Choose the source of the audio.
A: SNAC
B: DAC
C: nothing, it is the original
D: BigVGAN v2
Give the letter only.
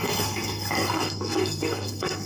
A